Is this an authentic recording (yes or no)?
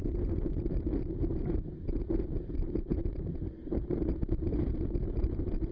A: no